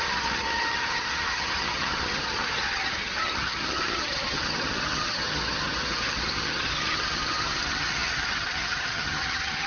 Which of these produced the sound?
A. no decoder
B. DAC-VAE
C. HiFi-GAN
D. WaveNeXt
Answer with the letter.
C